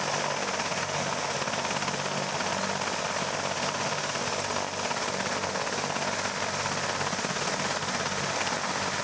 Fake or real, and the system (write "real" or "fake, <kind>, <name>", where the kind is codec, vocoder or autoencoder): real